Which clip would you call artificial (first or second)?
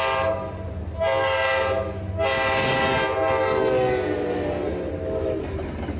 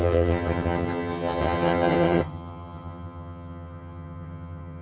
second